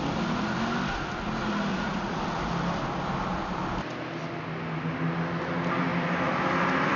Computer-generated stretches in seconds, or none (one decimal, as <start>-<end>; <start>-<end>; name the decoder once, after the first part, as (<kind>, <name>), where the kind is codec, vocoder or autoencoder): 1.7-2.2 (vocoder, Vocos)

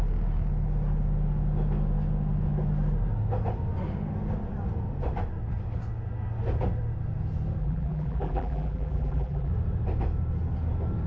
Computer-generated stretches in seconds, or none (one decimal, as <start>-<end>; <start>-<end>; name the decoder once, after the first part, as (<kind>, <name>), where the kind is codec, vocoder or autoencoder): 7.6-9.5 (vocoder, BigVGAN v2)

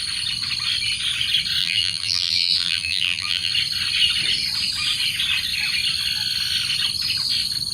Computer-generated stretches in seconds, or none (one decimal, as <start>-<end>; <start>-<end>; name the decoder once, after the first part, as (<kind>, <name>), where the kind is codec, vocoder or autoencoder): 1.6-3.5 (vocoder, BigVGAN v2)

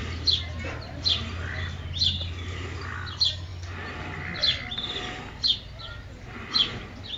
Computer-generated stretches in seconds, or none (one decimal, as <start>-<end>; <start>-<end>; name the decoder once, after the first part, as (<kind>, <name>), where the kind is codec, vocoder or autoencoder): 0.0-2.3 (vocoder, BigVGAN v2); 3.5-5.0

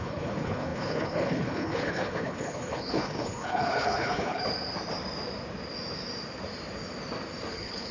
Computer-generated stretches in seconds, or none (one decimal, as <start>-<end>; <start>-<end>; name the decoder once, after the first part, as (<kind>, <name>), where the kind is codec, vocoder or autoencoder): 0.0-4.4 (codec, HILCodec); 7.5-7.9

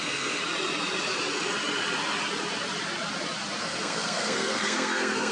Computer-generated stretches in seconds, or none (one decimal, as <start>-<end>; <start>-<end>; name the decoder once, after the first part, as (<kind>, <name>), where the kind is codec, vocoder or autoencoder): 0.0-0.4 (codec, SNAC); 3.6-5.3

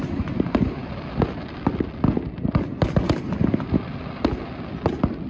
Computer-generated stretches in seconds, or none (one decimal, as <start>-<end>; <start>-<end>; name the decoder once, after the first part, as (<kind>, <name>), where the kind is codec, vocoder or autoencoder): none